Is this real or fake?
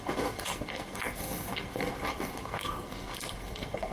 fake